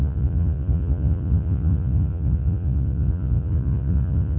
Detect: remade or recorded remade